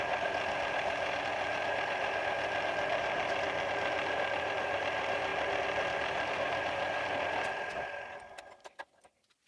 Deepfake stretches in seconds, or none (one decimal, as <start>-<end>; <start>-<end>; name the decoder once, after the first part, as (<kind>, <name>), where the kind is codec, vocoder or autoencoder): none